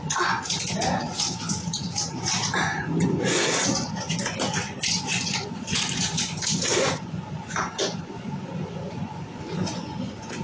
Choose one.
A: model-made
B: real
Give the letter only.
A